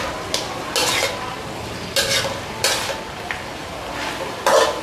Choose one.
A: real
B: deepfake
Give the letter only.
A